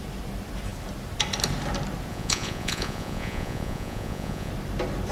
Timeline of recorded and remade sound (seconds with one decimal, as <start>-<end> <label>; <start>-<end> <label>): 0.0-2.1 recorded; 2.1-4.5 remade; 4.5-5.1 recorded